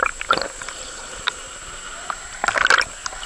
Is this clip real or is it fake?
real